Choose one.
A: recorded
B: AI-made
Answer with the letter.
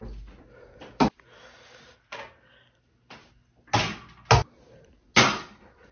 A